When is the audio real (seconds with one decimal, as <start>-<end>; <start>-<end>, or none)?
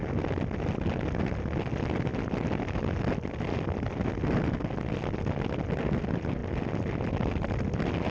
0.0-8.1